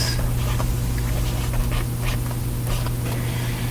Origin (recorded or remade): recorded